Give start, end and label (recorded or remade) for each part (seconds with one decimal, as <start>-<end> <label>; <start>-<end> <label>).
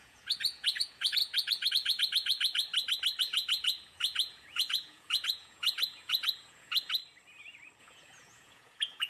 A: 0.0-2.7 remade; 2.7-3.2 recorded; 3.2-7.0 remade; 7.0-7.8 recorded; 7.8-9.1 remade